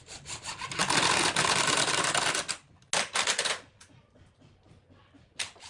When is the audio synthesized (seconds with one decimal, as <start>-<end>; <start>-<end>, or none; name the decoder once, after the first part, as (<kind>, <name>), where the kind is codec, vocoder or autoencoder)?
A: none